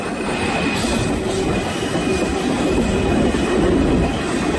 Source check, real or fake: real